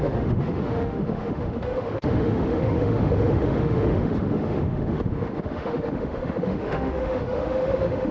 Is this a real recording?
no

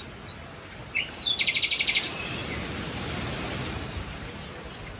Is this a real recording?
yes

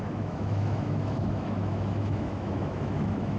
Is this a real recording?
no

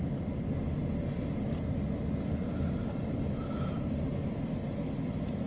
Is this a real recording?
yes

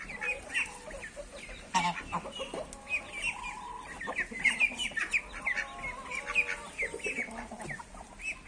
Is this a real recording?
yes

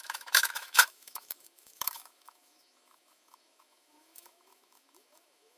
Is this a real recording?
no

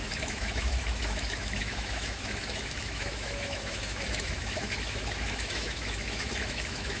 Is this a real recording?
no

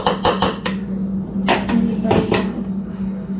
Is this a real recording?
yes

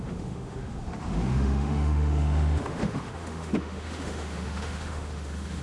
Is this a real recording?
no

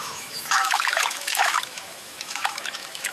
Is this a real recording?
no